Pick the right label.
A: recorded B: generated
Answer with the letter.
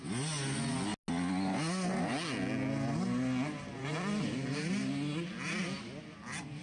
A